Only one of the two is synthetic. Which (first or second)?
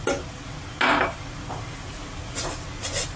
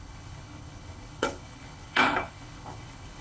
second